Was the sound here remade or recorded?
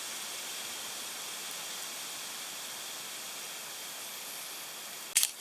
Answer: recorded